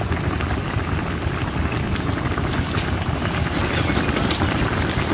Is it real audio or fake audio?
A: real